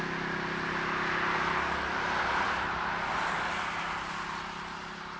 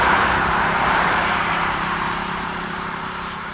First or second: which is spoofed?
second